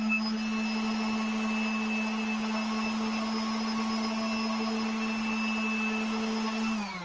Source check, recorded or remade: recorded